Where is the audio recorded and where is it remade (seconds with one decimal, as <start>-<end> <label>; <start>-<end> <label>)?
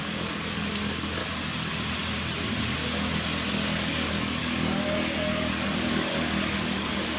0.0-1.2 remade; 1.2-3.5 recorded; 3.5-7.2 remade